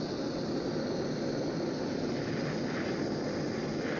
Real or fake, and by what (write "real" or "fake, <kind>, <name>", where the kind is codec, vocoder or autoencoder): real